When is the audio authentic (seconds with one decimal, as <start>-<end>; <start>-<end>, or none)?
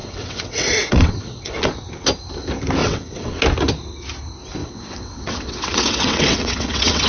1.7-2.8; 3.4-4.6